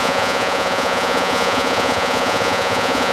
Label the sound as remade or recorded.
remade